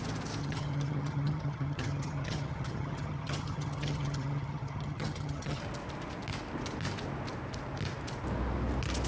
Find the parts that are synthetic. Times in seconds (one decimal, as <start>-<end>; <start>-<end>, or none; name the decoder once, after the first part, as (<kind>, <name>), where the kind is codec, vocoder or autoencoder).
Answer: 0.4-5.6 (vocoder, HiFi-GAN)